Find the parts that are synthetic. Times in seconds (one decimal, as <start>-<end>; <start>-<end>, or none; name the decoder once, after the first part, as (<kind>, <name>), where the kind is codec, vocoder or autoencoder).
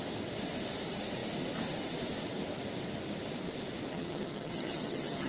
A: 3.9-5.3 (vocoder, HiFi-GAN)